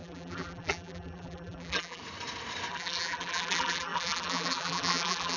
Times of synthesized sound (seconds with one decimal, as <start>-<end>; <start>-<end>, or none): 0.0-2.0; 2.7-5.4